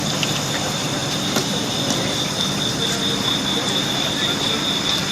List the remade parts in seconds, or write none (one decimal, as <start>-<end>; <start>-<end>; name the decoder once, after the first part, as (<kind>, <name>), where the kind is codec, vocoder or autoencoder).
none